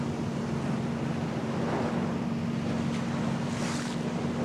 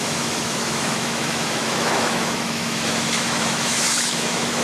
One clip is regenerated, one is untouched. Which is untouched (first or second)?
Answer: first